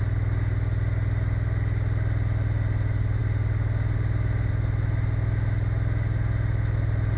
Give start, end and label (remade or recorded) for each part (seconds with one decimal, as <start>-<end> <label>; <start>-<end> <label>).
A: 0.0-7.2 recorded